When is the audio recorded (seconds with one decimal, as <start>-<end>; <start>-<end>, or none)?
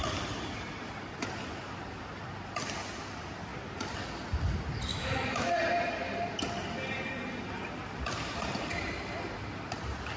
0.0-4.9; 5.5-10.2